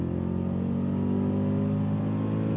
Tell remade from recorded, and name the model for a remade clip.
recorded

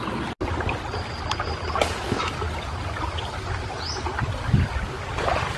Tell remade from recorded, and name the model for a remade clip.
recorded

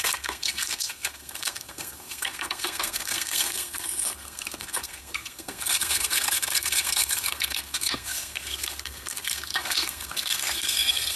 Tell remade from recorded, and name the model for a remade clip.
remade, codec, SNAC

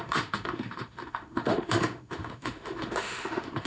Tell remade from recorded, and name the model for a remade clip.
remade, autoencoder, DAC-VAE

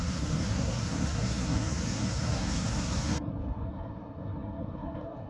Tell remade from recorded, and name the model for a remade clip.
remade, codec, SNAC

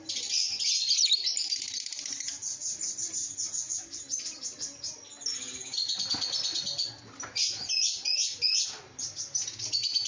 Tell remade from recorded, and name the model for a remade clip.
recorded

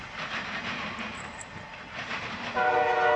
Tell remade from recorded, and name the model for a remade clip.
recorded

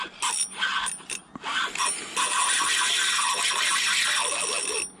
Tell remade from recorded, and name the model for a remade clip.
recorded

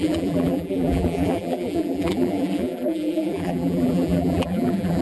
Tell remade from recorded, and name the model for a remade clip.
remade, vocoder, BigVGAN v2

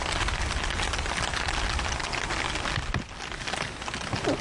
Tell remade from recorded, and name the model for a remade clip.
recorded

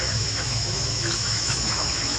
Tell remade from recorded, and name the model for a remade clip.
remade, autoencoder, DAC-VAE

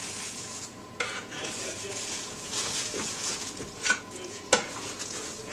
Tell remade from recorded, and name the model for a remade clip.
remade, vocoder, Vocos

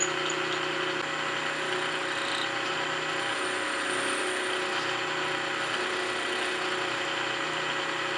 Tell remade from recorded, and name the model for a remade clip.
recorded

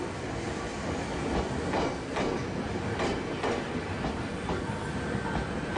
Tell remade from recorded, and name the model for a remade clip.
recorded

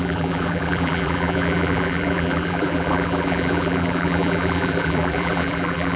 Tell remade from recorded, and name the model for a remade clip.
remade, vocoder, BigVGAN v2